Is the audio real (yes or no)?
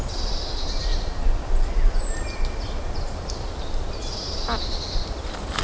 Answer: yes